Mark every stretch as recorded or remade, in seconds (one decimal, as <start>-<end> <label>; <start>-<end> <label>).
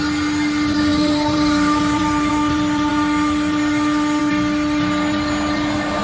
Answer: 0.0-0.9 recorded; 0.9-2.3 remade; 2.3-6.0 recorded